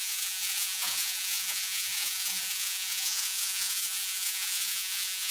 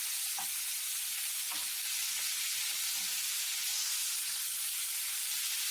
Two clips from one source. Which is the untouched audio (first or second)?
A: second